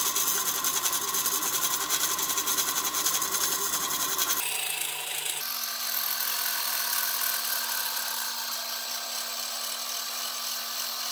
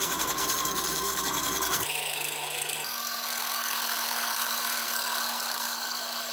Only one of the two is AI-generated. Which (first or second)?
second